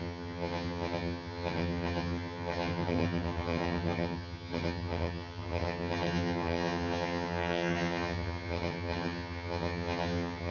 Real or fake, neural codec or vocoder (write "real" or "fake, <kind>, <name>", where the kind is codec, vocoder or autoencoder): fake, vocoder, HiFi-GAN